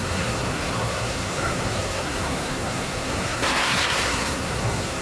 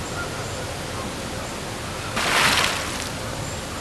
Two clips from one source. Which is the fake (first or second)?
first